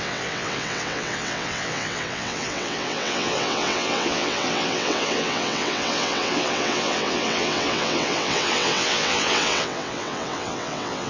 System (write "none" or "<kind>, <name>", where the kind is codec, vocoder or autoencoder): vocoder, WaveNeXt